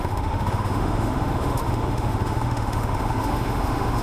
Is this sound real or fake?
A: fake